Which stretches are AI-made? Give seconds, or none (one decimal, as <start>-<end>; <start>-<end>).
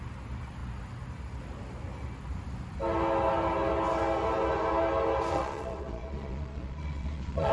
5.3-7.5